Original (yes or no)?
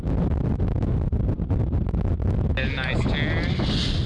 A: yes